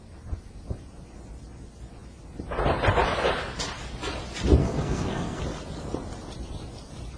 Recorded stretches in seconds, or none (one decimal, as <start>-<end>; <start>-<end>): 0.0-4.6; 5.4-7.2